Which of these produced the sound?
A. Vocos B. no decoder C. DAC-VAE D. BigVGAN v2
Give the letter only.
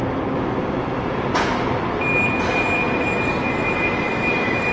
B